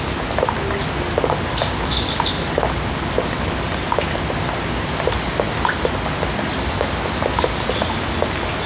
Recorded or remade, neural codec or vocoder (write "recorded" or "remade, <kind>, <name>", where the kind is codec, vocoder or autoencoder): recorded